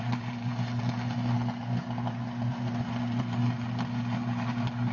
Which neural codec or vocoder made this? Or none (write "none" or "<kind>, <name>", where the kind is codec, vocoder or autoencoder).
none